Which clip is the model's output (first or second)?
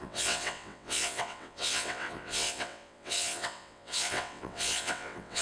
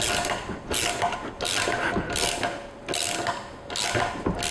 first